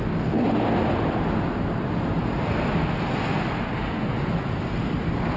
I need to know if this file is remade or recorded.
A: recorded